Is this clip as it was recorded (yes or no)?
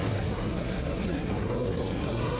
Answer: no